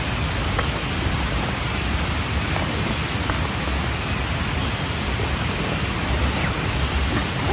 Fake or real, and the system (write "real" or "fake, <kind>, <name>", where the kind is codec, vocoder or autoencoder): real